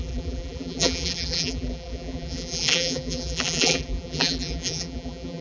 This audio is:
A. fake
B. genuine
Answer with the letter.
A